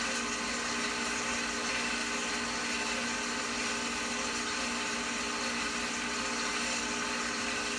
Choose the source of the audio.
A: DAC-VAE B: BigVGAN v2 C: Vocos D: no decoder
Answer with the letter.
D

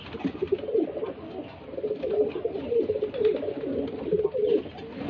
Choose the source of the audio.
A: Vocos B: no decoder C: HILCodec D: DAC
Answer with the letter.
B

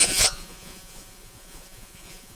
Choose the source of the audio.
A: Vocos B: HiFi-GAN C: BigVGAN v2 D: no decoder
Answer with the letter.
A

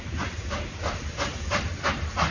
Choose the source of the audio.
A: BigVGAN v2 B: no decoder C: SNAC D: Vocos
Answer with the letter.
B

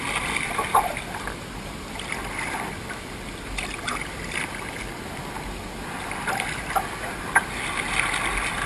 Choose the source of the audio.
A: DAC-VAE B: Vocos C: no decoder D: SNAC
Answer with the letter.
C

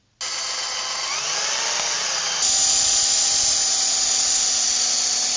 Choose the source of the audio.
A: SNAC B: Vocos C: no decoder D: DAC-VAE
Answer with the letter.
C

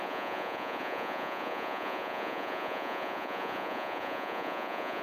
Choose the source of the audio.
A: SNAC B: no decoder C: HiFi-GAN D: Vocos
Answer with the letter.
D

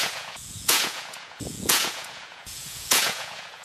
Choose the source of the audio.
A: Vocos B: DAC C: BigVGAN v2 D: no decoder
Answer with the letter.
A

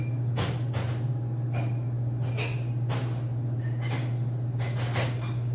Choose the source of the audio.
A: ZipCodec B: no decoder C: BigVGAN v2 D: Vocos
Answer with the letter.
B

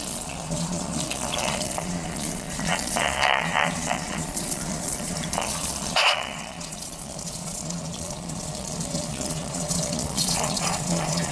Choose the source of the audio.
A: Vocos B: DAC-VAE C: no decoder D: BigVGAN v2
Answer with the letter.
A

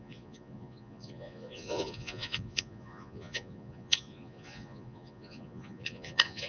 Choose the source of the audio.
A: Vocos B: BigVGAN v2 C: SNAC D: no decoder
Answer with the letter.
A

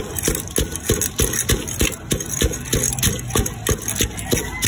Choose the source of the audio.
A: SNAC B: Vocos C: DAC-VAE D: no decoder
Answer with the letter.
D